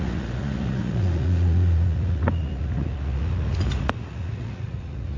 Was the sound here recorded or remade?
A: remade